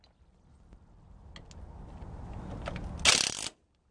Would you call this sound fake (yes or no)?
no